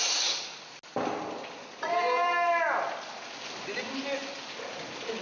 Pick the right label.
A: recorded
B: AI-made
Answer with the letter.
A